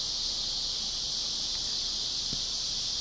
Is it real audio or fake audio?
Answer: real